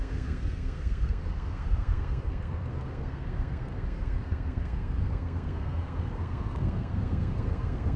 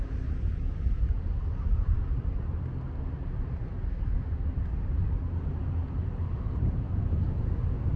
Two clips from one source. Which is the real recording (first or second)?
second